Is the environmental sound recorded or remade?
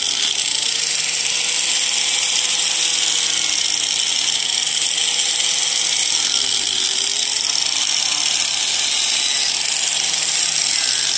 recorded